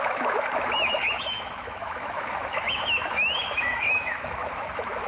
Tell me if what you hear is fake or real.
fake